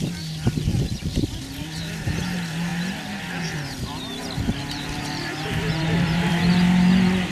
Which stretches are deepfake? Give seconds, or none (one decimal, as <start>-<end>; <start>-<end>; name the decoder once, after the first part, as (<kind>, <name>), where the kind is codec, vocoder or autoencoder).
4.6-6.4 (vocoder, BigVGAN v2)